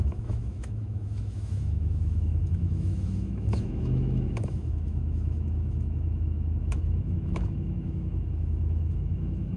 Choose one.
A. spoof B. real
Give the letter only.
A